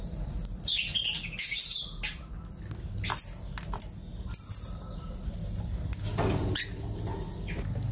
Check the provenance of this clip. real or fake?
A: real